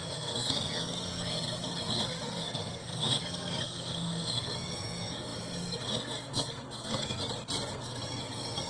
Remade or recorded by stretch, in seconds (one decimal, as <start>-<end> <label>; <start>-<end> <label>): 0.0-7.2 remade; 7.2-7.7 recorded; 7.7-8.7 remade